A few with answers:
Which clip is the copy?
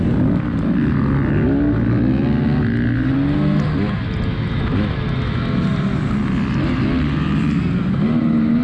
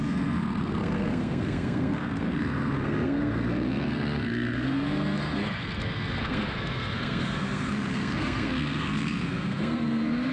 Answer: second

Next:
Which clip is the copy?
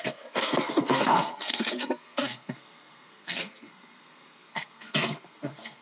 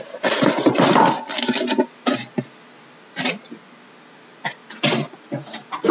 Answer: first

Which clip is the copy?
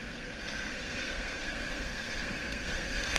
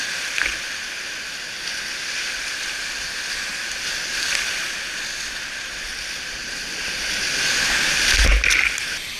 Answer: first